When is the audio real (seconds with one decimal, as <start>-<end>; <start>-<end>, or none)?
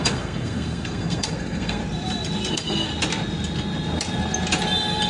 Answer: 1.8-2.5; 2.9-5.1